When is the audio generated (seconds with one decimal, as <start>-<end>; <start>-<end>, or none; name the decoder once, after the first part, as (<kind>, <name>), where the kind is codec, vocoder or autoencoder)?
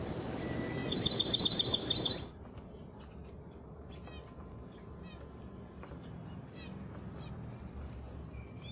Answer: none